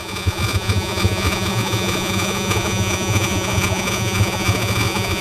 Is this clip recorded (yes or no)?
no